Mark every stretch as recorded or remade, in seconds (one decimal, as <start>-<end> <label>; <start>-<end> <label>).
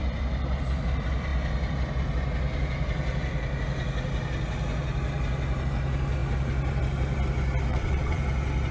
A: 0.0-7.7 recorded; 7.7-8.2 remade; 8.2-8.7 recorded